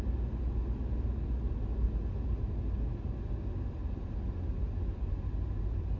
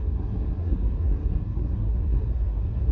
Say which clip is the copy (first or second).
second